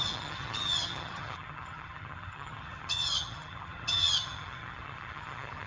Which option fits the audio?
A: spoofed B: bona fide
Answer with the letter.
A